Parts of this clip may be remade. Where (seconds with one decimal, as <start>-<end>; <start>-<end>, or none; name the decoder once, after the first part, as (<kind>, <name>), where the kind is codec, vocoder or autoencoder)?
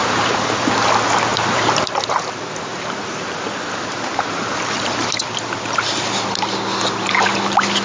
0.0-0.8 (vocoder, BigVGAN v2); 1.3-3.8; 4.5-6.0